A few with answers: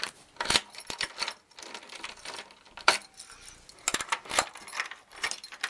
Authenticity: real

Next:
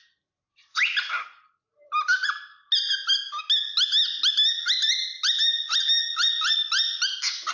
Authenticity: real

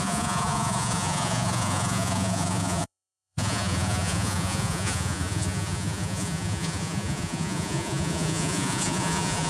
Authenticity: fake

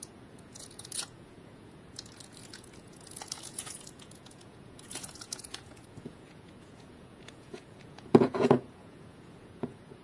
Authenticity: fake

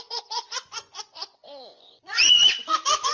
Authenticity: fake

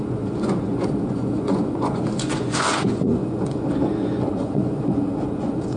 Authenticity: fake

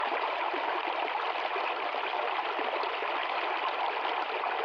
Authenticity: real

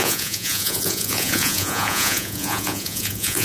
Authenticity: fake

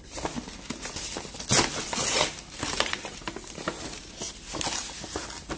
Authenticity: real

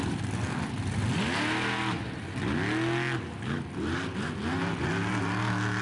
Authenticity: real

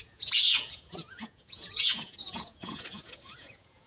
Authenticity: fake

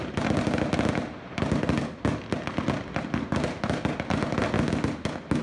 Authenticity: real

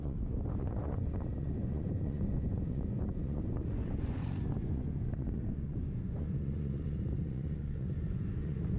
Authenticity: fake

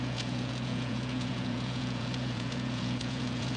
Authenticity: fake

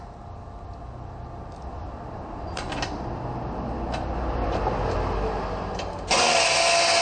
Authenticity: real